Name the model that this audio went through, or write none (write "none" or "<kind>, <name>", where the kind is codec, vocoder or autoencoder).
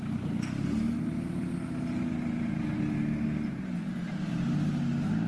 none